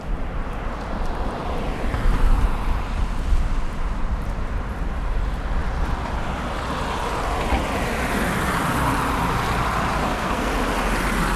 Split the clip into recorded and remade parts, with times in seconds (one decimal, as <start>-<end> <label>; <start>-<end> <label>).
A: 0.0-10.0 recorded; 10.0-10.5 remade; 10.5-11.4 recorded